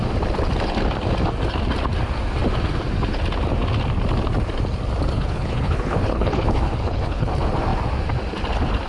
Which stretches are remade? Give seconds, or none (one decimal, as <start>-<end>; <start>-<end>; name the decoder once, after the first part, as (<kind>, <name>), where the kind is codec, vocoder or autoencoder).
5.1-7.3 (codec, HILCodec)